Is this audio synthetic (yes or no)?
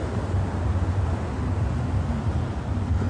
no